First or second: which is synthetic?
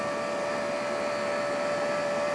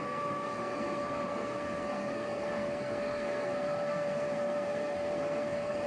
second